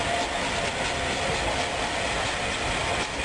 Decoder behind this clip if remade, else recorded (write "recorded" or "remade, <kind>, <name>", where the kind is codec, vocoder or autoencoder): recorded